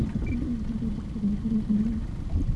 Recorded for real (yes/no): yes